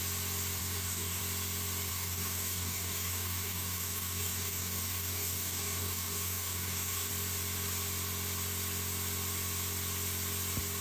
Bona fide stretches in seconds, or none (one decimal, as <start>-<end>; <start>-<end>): 0.0-0.6; 1.2-1.9; 7.1-10.8